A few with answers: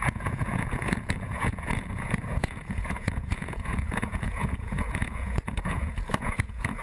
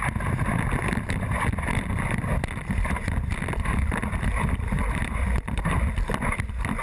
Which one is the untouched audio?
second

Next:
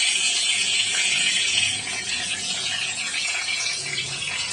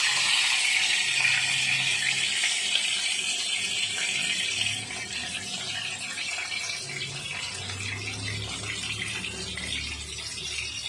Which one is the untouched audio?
second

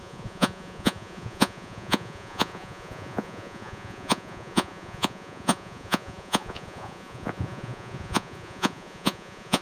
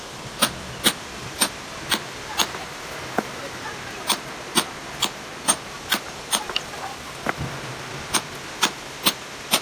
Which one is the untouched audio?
second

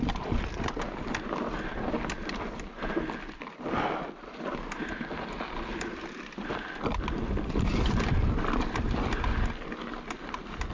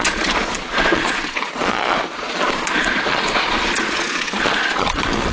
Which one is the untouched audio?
first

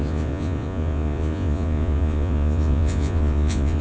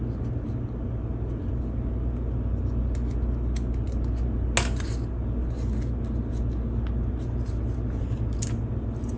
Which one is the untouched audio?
second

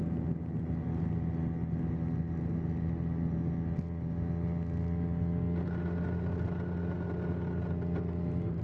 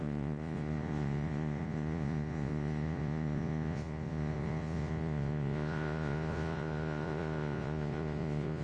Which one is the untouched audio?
first